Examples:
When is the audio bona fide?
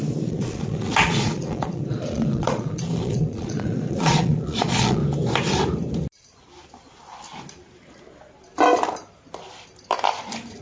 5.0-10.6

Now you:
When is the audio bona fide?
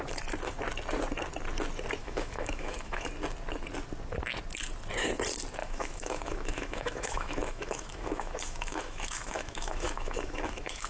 0.0-2.0; 3.1-5.6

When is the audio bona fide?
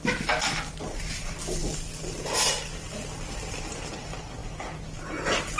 0.0-5.6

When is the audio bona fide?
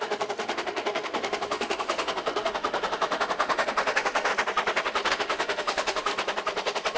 4.3-5.1; 6.1-7.0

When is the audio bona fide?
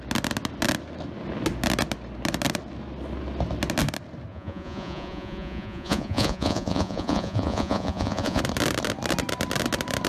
0.0-4.3; 8.4-10.1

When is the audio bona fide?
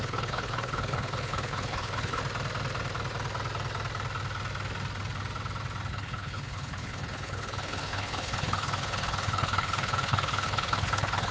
2.2-5.9